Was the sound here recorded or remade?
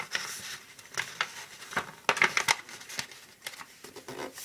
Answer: recorded